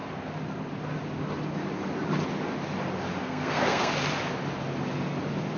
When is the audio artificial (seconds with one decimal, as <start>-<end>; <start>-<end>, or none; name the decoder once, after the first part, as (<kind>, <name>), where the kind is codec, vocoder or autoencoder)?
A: 3.2-3.9 (codec, SNAC)